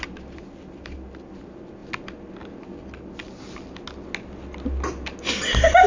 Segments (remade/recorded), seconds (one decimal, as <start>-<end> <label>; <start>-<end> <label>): 0.0-5.9 recorded